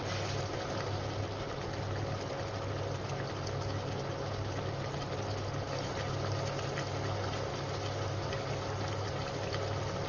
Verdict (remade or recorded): recorded